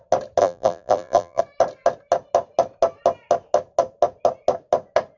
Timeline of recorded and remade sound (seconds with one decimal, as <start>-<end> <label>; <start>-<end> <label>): 0.0-0.4 recorded; 0.4-1.4 remade; 1.4-5.2 recorded